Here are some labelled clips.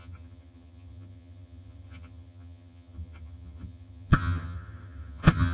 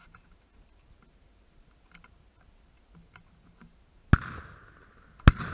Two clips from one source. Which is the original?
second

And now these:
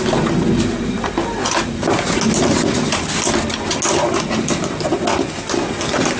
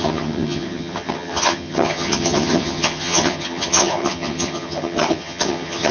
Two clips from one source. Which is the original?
first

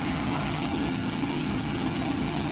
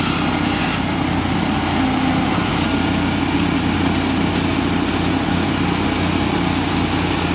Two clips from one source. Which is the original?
second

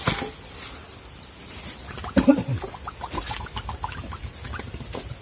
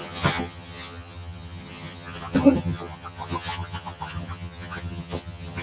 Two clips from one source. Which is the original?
first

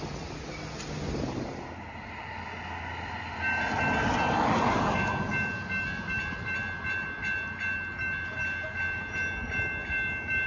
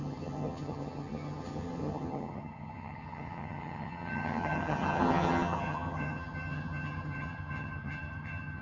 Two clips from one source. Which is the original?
first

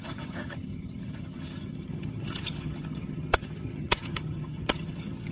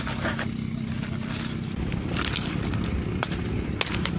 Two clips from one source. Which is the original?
second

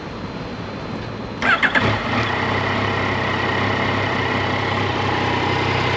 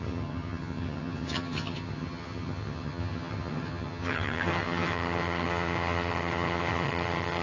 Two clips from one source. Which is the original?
first